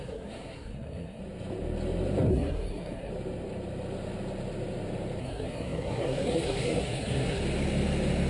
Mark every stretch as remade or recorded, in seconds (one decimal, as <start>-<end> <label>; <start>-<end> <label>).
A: 0.0-1.2 remade; 1.2-2.3 recorded; 2.3-3.1 remade; 3.1-5.2 recorded; 5.2-7.4 remade; 7.4-8.3 recorded